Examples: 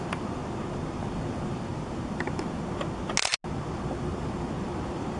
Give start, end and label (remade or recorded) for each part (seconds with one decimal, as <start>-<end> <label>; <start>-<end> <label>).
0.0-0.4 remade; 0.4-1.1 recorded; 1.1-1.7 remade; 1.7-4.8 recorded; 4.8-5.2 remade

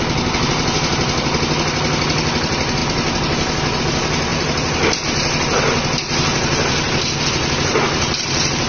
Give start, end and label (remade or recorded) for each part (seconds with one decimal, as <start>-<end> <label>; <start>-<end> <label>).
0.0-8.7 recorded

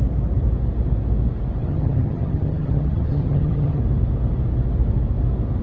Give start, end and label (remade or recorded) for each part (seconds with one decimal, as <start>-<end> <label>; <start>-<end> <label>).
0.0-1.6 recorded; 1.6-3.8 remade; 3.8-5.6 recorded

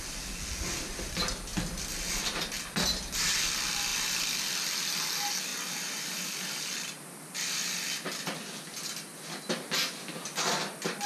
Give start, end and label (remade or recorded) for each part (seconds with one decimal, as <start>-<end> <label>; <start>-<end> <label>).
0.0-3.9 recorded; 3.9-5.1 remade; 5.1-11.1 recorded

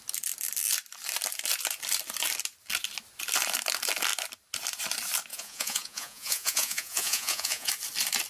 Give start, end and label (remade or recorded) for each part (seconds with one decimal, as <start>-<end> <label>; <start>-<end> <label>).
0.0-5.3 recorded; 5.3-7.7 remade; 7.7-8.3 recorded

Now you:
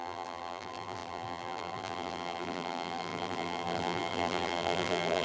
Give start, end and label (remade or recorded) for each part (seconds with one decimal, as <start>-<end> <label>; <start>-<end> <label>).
0.0-5.2 remade

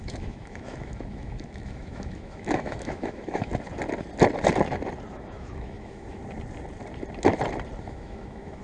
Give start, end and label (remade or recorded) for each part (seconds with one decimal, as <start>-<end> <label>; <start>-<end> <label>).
0.0-3.5 remade; 3.5-5.1 recorded; 5.1-6.2 remade; 6.2-7.8 recorded; 7.8-8.6 remade